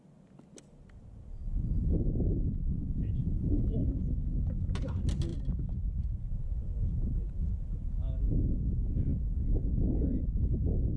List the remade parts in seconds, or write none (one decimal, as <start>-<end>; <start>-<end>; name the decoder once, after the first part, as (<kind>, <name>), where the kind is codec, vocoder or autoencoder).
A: 1.4-3.7 (vocoder, BigVGAN v2); 5.3-7.6